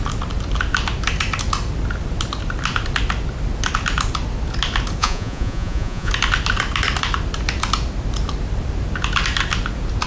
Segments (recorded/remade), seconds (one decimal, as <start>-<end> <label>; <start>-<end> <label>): 0.0-5.0 recorded; 5.0-6.1 remade; 6.1-10.1 recorded